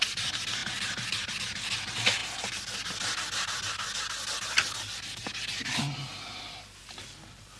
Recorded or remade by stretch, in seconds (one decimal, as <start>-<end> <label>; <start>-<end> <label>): 0.0-7.6 recorded